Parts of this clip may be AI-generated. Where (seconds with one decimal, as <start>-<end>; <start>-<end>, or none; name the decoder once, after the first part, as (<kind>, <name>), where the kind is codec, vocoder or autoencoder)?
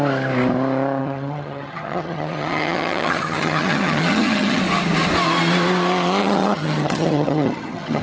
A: 1.0-4.6 (vocoder, HiFi-GAN); 6.2-8.0